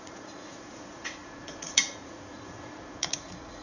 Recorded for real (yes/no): no